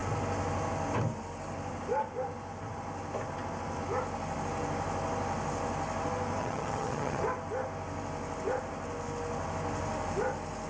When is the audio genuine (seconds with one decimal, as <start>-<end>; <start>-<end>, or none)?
0.0-6.4; 7.2-10.7